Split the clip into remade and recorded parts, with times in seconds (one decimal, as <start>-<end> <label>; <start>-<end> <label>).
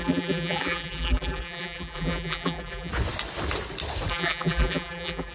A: 0.0-2.9 remade; 2.9-4.1 recorded; 4.1-5.3 remade